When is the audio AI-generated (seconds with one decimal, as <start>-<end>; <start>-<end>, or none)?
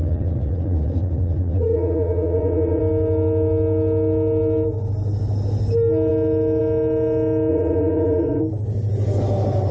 0.0-2.8; 7.5-8.4